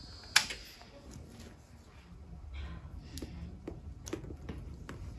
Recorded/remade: recorded